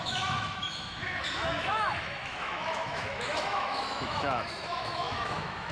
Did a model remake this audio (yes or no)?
yes